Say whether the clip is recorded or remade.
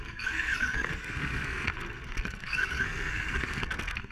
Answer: remade